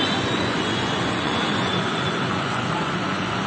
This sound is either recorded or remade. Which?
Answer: remade